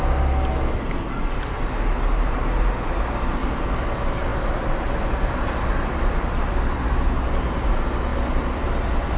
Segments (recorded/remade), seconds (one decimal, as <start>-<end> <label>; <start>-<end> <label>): 0.0-3.4 recorded; 3.4-3.9 remade; 3.9-4.3 recorded; 4.3-7.1 remade; 7.1-8.1 recorded; 8.1-9.2 remade